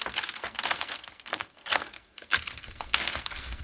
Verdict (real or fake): fake